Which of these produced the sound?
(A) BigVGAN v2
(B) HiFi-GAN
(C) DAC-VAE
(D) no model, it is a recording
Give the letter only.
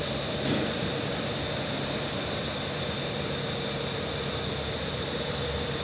D